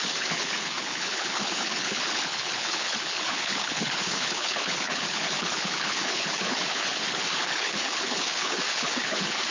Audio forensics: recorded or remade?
remade